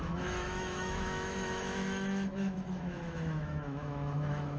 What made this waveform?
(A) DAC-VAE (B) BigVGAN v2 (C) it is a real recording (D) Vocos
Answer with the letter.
A